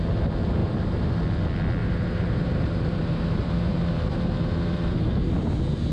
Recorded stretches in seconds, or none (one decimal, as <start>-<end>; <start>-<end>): 0.0-0.6; 1.1-1.8; 5.3-5.9